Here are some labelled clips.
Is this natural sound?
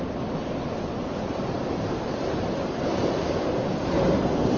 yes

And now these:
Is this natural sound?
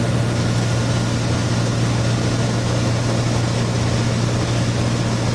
yes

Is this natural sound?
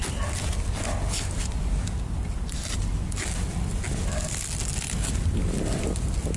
yes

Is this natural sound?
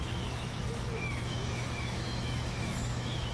no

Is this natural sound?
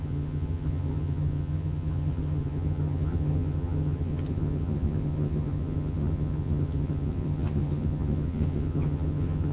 no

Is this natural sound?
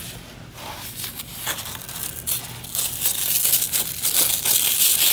yes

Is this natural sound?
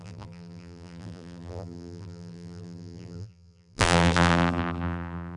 no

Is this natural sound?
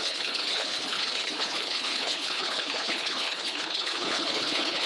no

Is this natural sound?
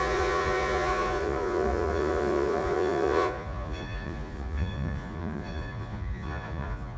no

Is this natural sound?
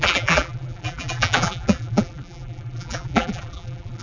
no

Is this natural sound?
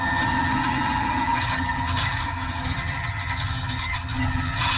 no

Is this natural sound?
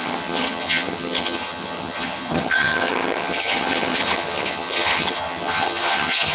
no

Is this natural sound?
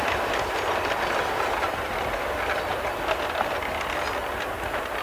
yes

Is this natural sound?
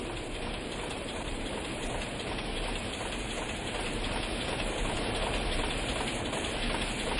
no